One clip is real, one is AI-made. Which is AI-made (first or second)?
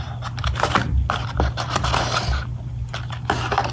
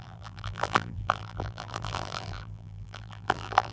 second